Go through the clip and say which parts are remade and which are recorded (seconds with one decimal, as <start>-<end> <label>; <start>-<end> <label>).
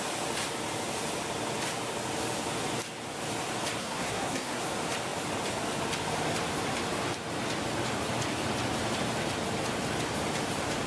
0.0-3.8 recorded; 3.8-4.6 remade; 4.6-10.9 recorded